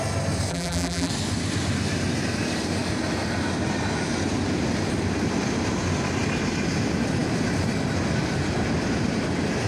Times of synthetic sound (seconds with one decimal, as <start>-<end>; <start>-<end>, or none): 0.5-1.1